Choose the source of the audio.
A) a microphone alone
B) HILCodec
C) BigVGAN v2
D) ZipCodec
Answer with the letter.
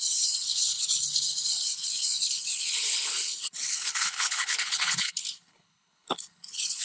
B